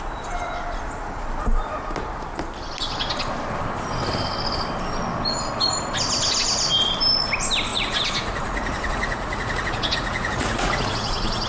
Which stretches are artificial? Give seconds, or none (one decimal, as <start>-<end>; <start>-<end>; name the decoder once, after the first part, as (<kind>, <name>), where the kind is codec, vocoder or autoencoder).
7.7-11.5 (vocoder, Vocos)